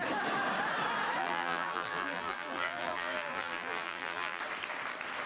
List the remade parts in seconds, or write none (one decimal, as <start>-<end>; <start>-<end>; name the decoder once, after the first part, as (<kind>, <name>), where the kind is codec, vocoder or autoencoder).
1.2-4.4 (vocoder, BigVGAN v2)